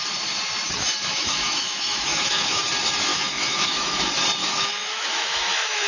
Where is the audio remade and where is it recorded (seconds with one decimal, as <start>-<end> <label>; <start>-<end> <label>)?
0.0-1.1 recorded; 1.1-2.6 remade; 2.6-3.1 recorded; 3.1-4.0 remade; 4.0-4.4 recorded; 4.4-5.9 remade